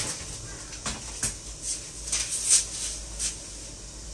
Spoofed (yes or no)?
no